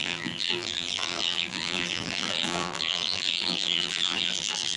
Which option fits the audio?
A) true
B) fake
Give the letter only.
B